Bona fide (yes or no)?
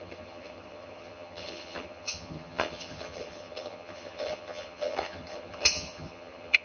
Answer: no